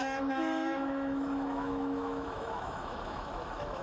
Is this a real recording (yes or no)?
no